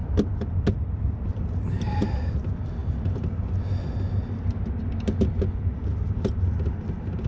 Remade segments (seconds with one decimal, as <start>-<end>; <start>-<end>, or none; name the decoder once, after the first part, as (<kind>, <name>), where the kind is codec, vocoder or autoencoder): none